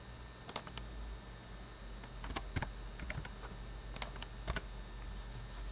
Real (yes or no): yes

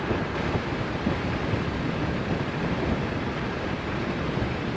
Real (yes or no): yes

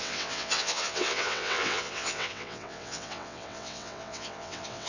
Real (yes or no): no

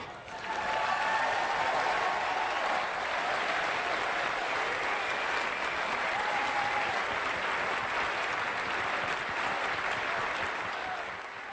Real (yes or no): yes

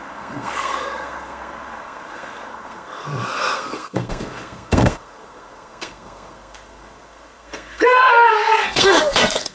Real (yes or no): no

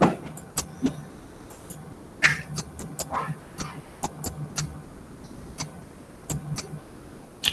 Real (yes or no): yes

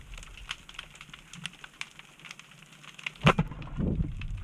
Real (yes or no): yes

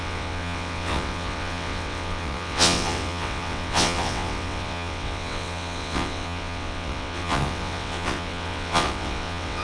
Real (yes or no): no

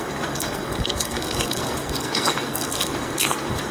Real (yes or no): no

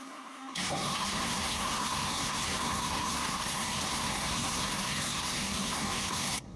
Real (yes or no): no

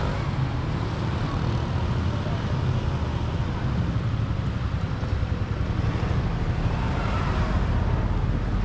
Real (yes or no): yes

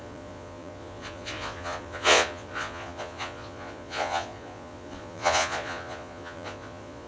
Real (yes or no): no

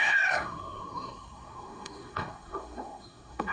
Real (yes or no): no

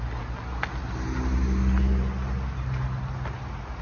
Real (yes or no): yes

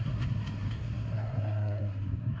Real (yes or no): no